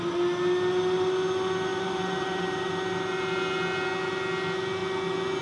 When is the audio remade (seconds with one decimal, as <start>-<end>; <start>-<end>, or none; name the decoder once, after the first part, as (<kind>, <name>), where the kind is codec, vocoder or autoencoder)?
1.7-2.7 (vocoder, BigVGAN v2)